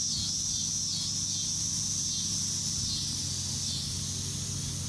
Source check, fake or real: real